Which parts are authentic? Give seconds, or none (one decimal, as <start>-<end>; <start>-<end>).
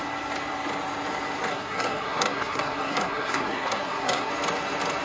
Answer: 0.0-1.5; 4.3-5.0